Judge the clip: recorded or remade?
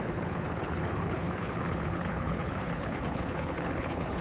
remade